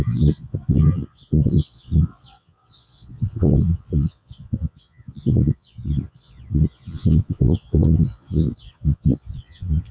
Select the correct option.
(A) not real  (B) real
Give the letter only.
A